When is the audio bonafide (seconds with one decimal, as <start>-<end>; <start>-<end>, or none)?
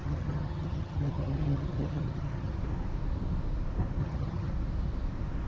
2.5-4.0; 4.5-5.5